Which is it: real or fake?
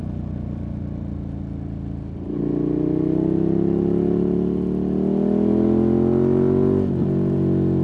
real